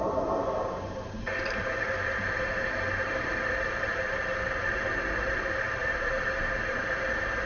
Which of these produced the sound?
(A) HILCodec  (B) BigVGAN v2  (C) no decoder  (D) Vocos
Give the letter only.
B